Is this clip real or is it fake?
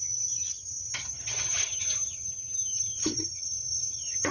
fake